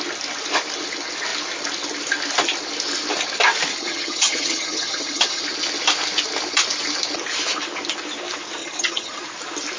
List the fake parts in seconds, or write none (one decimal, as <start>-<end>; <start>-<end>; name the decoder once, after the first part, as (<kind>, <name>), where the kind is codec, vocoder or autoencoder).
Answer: 3.7-5.4 (vocoder, HiFi-GAN); 8.6-9.2